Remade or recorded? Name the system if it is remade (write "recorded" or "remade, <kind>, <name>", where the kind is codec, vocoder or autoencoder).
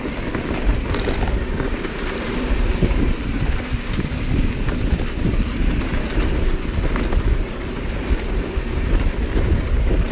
recorded